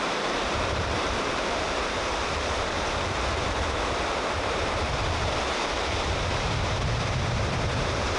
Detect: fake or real fake